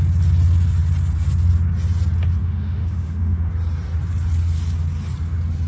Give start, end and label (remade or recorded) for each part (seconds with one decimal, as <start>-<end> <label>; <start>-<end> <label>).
0.0-2.4 recorded; 2.4-3.5 remade; 3.5-5.7 recorded